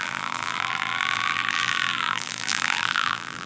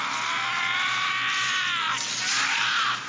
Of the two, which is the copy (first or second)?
first